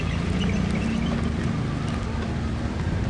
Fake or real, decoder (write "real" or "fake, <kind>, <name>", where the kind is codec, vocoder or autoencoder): real